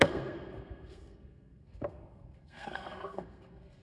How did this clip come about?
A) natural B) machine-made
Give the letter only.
B